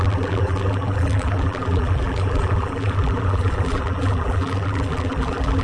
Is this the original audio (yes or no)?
no